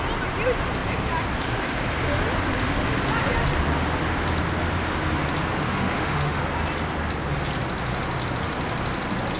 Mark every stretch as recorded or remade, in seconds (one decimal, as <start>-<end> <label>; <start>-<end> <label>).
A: 0.0-5.7 recorded; 5.7-6.4 remade; 6.4-9.4 recorded